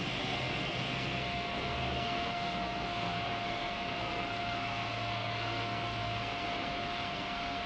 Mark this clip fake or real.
fake